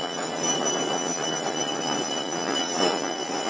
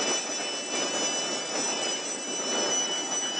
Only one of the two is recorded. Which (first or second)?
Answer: second